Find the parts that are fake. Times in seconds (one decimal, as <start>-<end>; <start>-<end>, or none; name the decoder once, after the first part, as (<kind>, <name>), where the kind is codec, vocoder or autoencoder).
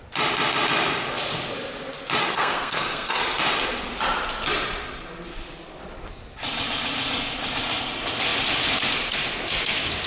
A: 2.2-3.2 (codec, SNAC)